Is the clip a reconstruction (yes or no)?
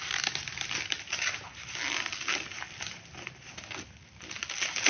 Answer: no